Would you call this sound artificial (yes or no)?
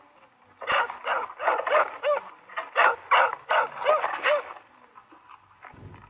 no